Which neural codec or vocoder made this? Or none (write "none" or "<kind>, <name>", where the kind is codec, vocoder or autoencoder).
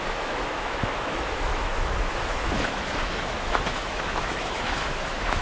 autoencoder, DAC-VAE